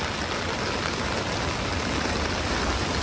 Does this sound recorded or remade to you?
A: recorded